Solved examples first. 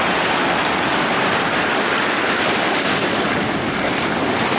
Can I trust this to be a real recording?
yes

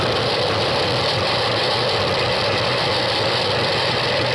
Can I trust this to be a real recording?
yes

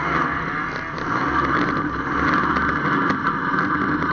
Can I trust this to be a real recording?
yes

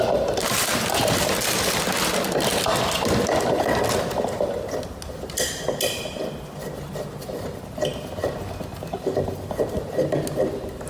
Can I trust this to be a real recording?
yes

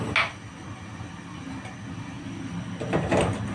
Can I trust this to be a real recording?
yes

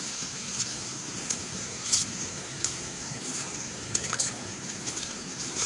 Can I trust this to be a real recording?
no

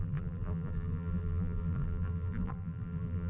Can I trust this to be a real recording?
no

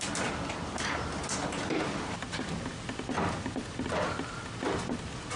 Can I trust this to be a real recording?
yes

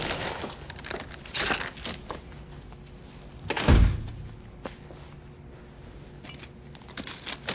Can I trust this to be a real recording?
yes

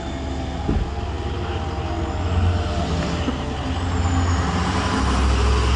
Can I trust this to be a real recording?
yes